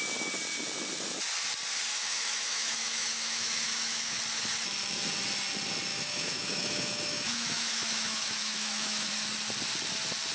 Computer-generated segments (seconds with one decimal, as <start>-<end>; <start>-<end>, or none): 1.9-4.2; 5.9-9.1